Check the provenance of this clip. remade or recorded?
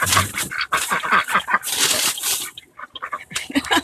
recorded